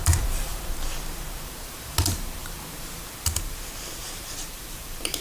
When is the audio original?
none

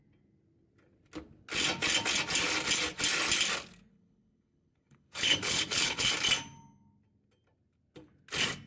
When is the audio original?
0.0-3.9; 6.1-8.7

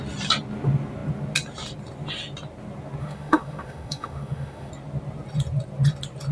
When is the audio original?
0.0-3.0; 4.7-6.3

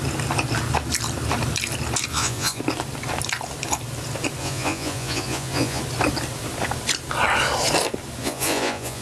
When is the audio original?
0.0-2.1; 2.6-4.4; 5.8-8.2

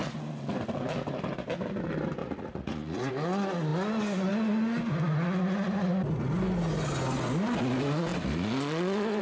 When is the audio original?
0.0-2.2; 3.1-9.2

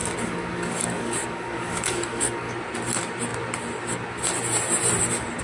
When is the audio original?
2.5-5.4

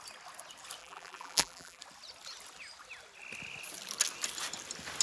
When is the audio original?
0.0-0.8; 1.8-5.0